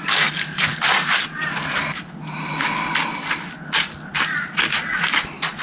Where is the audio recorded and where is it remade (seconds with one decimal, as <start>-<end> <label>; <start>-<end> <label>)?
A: 0.0-5.6 recorded